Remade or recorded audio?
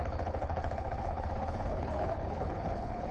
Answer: remade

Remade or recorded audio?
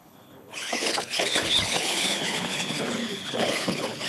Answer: remade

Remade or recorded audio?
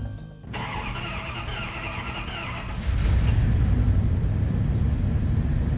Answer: recorded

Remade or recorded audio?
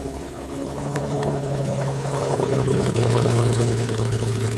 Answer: remade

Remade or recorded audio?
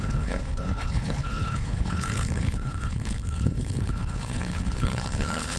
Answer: remade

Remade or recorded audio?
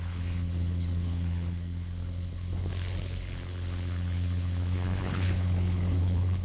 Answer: remade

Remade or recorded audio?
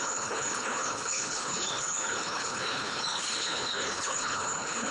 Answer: remade